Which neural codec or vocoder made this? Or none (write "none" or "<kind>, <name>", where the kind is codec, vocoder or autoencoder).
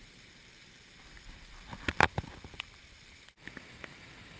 none